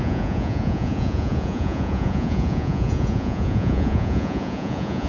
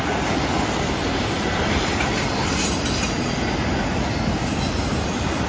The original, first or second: second